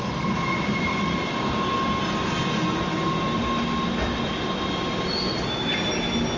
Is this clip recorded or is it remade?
recorded